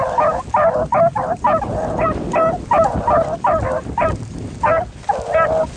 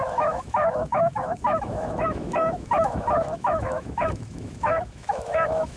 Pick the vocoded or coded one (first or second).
second